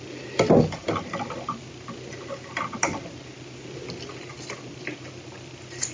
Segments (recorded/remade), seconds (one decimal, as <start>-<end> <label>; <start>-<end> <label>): 0.0-5.9 recorded